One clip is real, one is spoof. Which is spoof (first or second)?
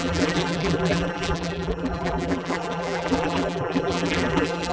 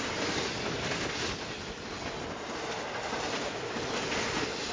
first